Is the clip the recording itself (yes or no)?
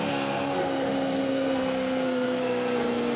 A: no